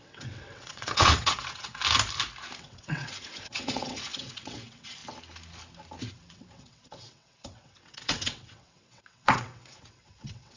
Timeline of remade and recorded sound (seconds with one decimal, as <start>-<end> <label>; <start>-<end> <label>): 0.0-1.8 remade; 1.8-2.6 recorded; 2.6-5.0 remade; 5.0-6.1 recorded; 6.1-10.6 remade